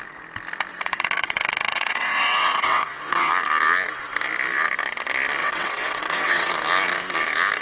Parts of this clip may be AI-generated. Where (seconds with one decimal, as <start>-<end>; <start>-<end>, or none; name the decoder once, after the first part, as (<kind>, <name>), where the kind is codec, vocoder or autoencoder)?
0.7-3.3 (vocoder, WaveNeXt); 5.4-6.5